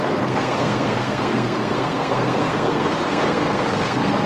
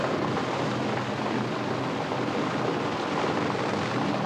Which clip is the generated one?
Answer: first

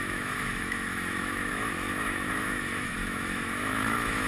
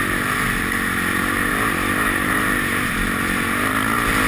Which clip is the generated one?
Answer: first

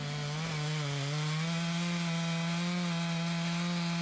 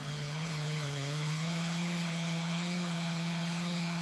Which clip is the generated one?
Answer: second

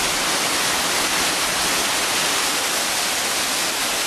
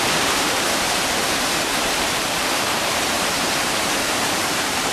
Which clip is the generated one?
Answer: second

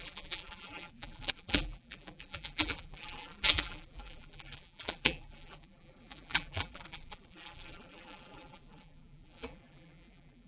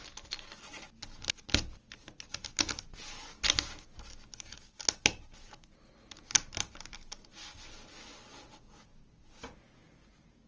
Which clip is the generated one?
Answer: first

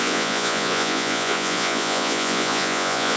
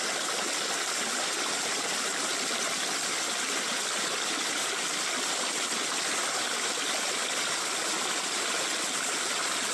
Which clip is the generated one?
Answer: first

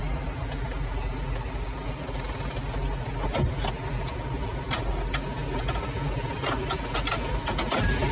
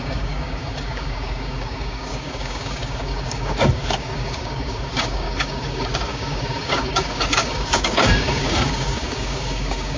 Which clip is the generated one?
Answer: second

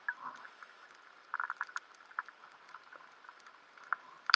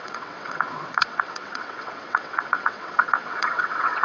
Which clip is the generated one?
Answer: second